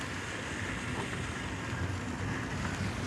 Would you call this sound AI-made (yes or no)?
no